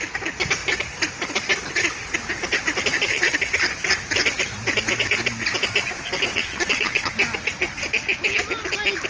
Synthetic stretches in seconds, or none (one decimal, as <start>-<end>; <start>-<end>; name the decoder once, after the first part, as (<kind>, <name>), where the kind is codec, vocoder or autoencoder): 2.9-3.4 (vocoder, WaveNeXt); 6.3-7.1